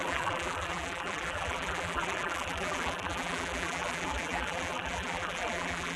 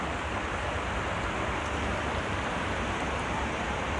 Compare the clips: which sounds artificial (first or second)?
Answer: first